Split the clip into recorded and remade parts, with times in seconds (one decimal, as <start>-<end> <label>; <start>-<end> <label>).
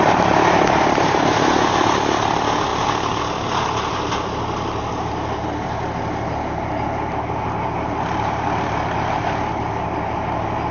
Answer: 0.0-2.7 remade; 2.7-3.2 recorded; 3.2-10.7 remade